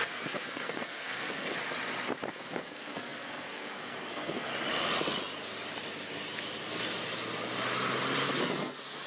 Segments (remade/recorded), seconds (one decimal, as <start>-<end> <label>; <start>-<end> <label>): 0.0-1.5 remade; 1.5-2.3 recorded; 2.3-4.5 remade; 4.5-8.4 recorded; 8.4-9.1 remade